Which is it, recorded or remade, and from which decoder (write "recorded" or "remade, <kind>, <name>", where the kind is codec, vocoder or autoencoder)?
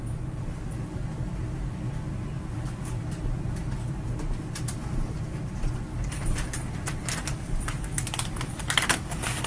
remade, vocoder, BigVGAN v2